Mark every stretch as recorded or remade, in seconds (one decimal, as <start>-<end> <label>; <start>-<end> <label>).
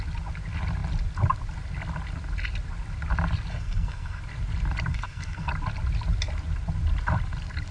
0.0-3.5 recorded; 3.5-4.2 remade; 4.2-4.9 recorded; 4.9-5.5 remade; 5.5-7.7 recorded